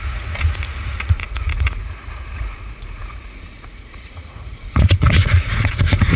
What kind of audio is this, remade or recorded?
remade